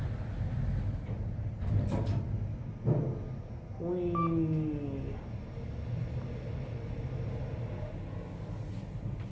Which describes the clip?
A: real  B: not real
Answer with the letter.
A